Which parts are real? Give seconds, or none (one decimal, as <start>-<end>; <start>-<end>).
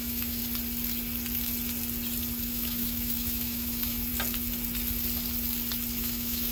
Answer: 0.4-2.5; 4.1-6.0